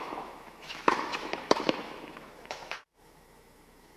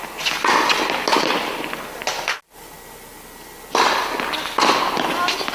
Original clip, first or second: second